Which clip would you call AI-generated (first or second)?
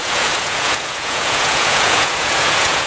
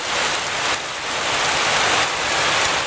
first